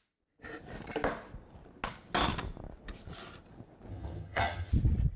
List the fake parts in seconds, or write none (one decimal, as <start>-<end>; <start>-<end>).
3.9-4.7